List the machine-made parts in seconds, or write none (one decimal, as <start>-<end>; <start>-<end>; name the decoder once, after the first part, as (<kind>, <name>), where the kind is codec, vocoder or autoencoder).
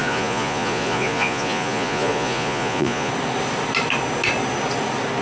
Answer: 0.0-3.1 (vocoder, Vocos)